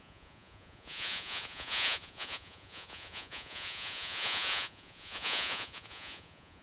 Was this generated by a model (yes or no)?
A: yes